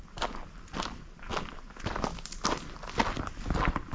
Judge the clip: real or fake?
real